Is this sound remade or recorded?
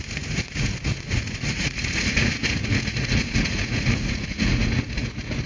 remade